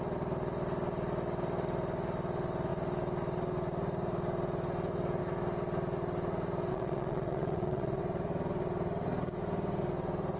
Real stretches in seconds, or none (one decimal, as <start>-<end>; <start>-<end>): 0.0-6.7; 8.0-10.4